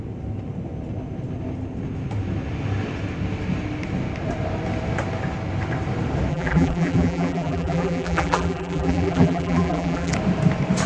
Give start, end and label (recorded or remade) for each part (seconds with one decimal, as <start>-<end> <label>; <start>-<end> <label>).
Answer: 0.0-6.3 recorded; 6.3-10.1 remade; 10.1-10.9 recorded